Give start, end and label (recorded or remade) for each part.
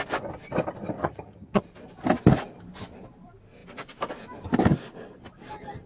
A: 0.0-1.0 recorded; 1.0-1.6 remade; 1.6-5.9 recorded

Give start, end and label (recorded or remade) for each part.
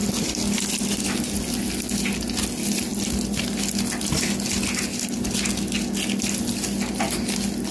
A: 0.0-7.7 recorded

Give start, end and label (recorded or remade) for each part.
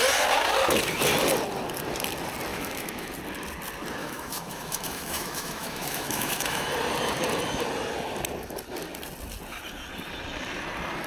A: 0.0-2.5 recorded; 2.5-3.1 remade; 3.1-4.0 recorded; 4.0-6.7 remade; 6.7-11.1 recorded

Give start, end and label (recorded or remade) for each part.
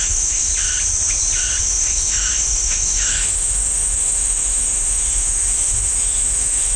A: 0.0-0.5 remade; 0.5-1.6 recorded; 1.6-6.8 remade